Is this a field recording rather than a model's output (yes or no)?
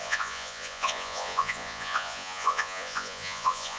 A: no